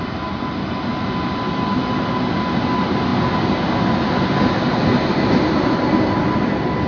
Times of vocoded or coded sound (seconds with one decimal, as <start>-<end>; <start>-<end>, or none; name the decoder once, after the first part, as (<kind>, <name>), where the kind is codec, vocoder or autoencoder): none